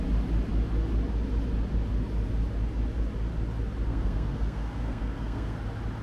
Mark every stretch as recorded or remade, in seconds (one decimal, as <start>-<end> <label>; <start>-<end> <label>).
0.0-3.9 recorded; 3.9-5.6 remade; 5.6-6.0 recorded